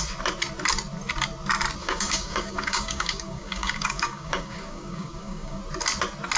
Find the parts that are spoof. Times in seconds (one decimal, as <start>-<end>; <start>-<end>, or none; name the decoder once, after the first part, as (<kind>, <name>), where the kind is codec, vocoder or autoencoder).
1.8-5.6 (codec, DAC)